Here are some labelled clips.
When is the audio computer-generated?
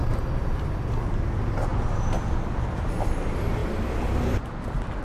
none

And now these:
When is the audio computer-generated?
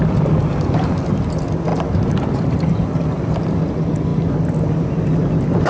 1.7-2.8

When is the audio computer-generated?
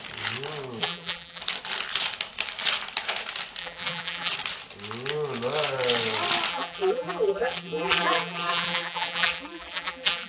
0.8-1.4; 3.6-4.3; 6.5-10.3